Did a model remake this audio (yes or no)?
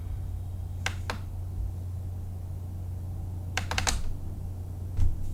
no